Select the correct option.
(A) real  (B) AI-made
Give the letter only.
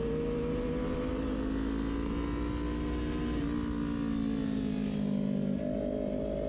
A